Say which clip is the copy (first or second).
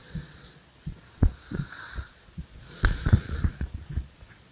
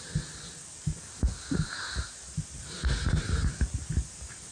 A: first